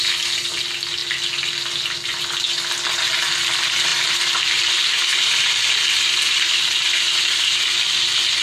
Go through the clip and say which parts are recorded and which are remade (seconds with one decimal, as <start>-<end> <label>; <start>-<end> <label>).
0.0-3.9 recorded; 3.9-4.5 remade; 4.5-5.1 recorded; 5.1-8.0 remade; 8.0-8.4 recorded